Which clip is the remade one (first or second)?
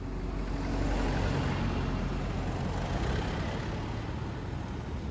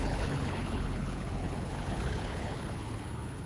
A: second